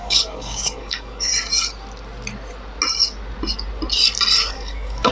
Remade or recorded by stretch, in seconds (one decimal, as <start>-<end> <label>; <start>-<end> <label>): 0.0-1.3 remade; 1.3-4.4 recorded; 4.4-5.1 remade